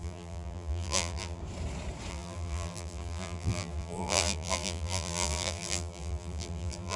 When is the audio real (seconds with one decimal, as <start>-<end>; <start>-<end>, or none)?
1.4-2.1